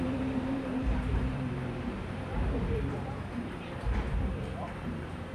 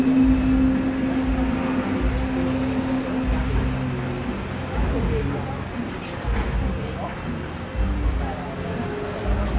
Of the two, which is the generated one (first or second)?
first